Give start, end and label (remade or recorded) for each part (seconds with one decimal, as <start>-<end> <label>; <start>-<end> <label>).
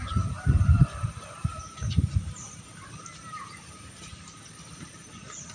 0.0-5.5 remade